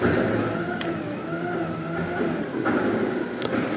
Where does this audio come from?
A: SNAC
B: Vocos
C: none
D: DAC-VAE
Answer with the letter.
C